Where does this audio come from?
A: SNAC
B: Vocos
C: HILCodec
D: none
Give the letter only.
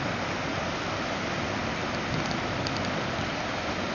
D